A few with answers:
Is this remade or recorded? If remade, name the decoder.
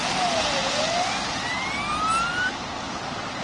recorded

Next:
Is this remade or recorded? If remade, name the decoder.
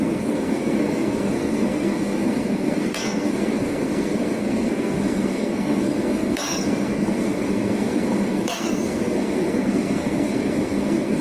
remade, codec, SNAC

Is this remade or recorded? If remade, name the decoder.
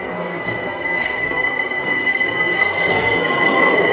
remade, codec, SNAC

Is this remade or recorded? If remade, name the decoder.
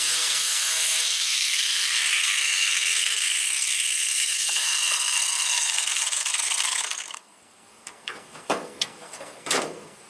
remade, codec, SNAC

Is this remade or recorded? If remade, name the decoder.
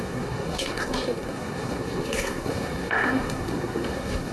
remade, codec, SNAC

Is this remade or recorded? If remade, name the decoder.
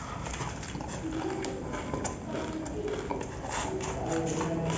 recorded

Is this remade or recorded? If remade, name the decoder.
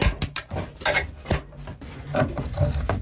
recorded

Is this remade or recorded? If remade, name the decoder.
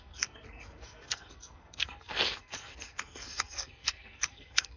remade, codec, SNAC